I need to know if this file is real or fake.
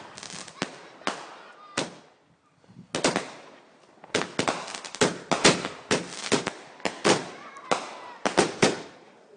real